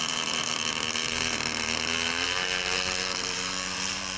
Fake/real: fake